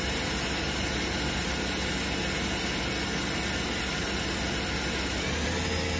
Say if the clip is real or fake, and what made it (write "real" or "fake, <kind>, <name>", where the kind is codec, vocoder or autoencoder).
real